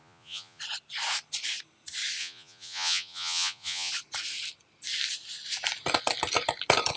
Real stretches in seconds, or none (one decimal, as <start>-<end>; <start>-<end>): 0.6-2.2; 3.9-7.0